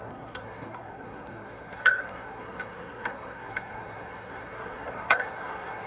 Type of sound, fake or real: fake